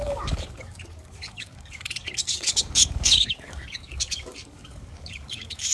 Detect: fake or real fake